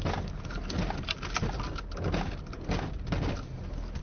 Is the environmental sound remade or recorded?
recorded